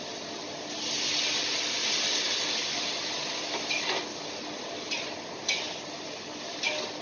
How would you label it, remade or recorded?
recorded